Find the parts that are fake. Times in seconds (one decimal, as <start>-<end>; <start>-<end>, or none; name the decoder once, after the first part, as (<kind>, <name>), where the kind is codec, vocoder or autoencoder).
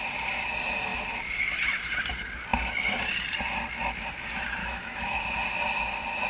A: 4.6-5.2 (autoencoder, DAC-VAE)